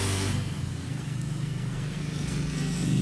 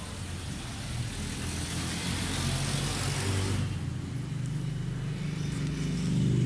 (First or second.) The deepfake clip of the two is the first